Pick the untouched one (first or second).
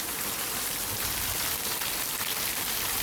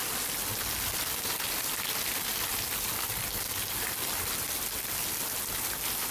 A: second